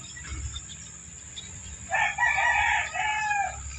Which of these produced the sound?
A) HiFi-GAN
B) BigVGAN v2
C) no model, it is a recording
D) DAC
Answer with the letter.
C